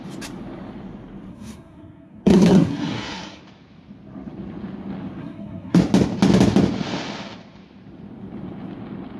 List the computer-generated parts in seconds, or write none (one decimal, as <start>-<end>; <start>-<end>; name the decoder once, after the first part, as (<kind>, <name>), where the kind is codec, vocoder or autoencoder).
1.3-3.4 (codec, SNAC); 5.2-5.8